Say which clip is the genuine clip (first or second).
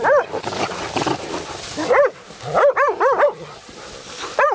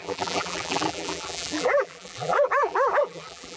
first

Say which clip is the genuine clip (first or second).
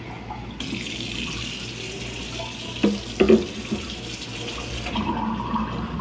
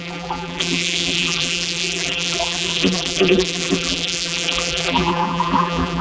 first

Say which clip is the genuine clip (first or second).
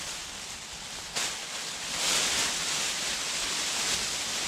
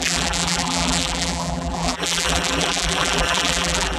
first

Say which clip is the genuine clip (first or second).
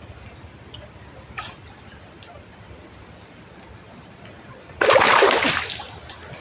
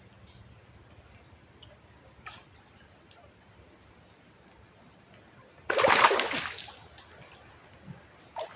second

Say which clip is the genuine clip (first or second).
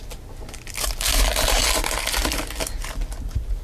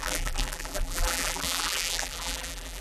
first